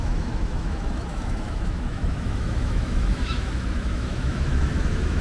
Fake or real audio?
fake